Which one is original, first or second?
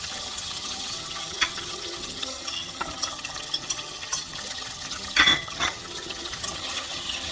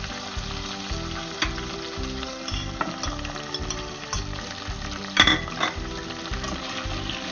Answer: second